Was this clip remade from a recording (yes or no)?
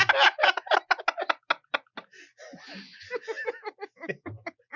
no